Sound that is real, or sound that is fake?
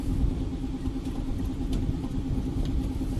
real